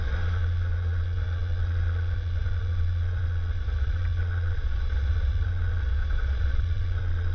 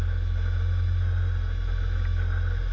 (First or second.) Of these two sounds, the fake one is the first